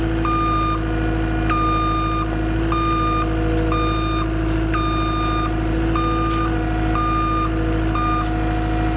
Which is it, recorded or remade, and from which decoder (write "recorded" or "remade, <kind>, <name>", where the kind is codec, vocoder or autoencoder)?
recorded